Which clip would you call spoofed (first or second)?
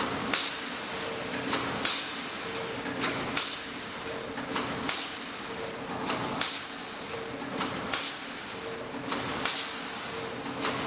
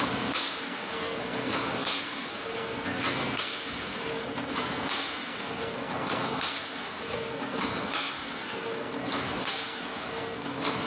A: second